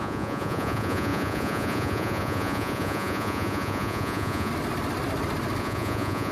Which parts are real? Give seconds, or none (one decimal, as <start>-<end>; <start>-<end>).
4.5-5.6